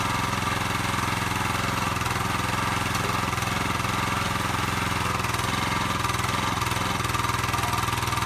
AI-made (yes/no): no